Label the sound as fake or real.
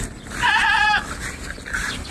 real